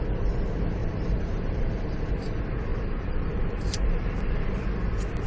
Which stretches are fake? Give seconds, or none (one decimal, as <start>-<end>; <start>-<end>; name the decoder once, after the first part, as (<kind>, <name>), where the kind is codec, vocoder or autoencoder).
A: 0.8-2.1 (vocoder, BigVGAN v2); 2.7-4.2